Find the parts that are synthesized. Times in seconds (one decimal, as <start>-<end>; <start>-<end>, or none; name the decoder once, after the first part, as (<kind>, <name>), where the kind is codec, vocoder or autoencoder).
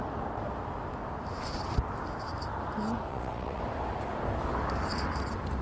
3.1-3.6 (vocoder, WaveNeXt)